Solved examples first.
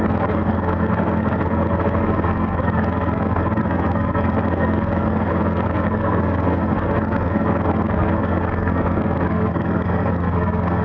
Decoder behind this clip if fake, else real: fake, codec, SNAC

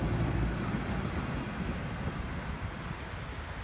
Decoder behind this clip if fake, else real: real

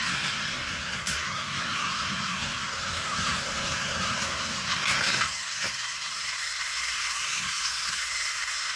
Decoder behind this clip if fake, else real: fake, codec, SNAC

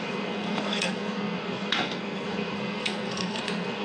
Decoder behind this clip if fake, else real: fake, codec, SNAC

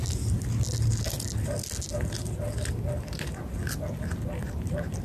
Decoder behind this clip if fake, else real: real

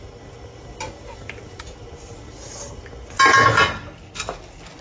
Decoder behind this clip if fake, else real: real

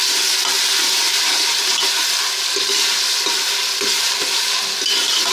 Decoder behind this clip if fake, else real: real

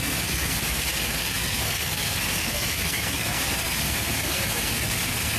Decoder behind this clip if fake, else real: fake, codec, SNAC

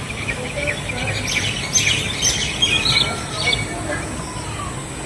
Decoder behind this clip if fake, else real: real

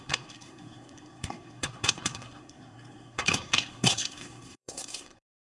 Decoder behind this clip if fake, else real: fake, codec, SNAC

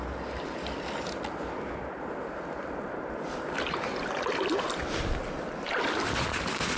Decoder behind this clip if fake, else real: real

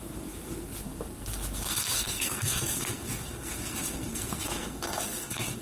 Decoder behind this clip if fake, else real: fake, codec, SNAC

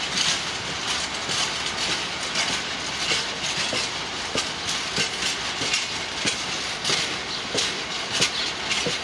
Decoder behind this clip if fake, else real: real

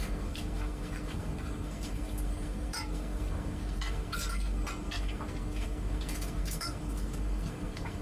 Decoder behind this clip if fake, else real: fake, codec, SNAC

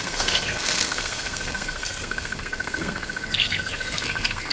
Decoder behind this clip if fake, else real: fake, codec, SNAC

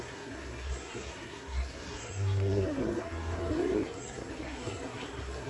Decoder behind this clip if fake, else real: fake, codec, SNAC